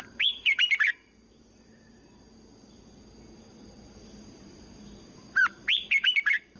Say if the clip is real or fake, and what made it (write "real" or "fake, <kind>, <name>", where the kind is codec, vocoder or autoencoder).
fake, vocoder, BigVGAN v2